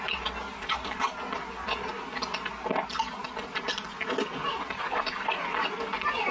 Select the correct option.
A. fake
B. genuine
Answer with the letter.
B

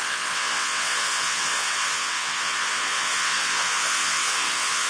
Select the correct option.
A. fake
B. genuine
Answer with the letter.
A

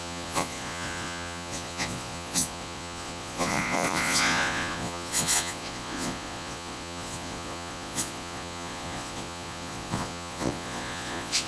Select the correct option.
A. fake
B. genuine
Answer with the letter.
A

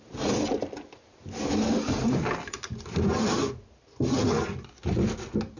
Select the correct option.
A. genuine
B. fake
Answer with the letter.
A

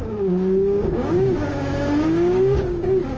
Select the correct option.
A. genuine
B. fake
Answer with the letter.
B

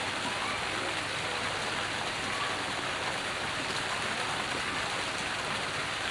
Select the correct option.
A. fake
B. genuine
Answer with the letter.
B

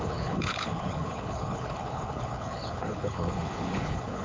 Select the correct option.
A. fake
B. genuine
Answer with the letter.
A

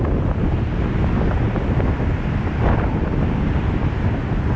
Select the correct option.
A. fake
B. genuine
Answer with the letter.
B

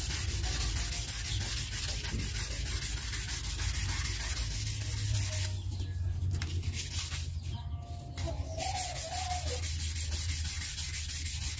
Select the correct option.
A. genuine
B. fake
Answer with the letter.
A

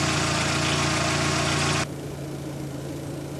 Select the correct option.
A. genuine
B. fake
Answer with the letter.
A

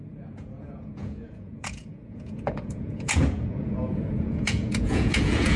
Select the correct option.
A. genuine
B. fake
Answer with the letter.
B